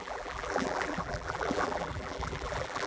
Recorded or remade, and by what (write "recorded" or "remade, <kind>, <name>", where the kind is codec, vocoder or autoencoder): remade, vocoder, BigVGAN v2